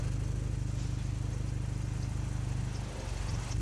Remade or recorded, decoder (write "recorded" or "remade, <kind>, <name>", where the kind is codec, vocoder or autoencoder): recorded